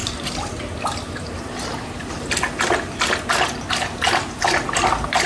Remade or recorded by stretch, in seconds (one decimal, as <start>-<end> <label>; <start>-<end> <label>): 0.0-5.3 recorded